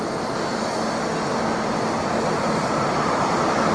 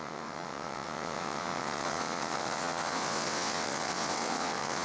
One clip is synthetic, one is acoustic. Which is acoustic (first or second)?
first